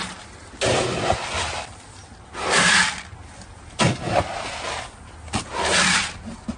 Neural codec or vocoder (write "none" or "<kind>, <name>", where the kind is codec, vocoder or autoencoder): none